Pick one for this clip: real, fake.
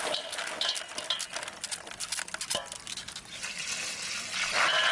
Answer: real